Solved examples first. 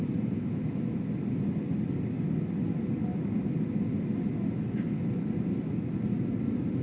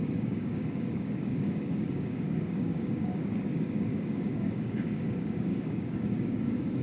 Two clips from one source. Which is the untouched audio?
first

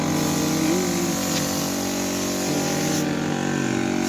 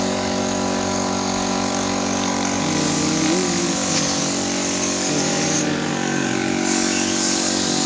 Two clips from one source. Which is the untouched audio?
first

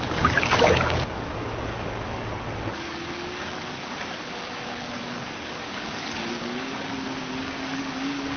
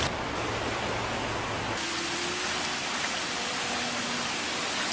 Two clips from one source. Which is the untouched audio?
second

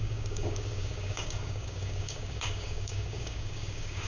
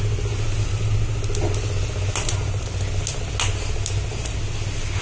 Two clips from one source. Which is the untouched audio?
second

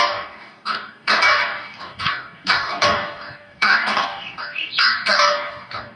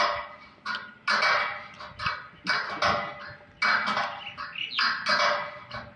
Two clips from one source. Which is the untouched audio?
second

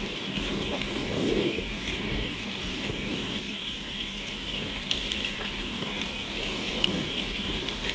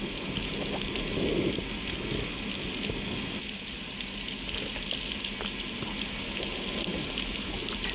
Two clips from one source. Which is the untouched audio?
second